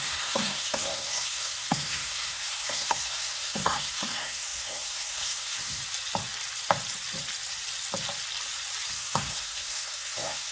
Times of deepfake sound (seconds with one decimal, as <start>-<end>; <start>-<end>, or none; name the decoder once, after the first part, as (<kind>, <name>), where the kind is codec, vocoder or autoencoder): 0.0-5.8 (codec, SNAC); 8.9-10.5